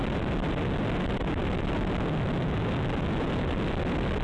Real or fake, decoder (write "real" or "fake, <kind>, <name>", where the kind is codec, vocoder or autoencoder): real